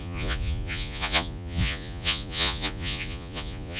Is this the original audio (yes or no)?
no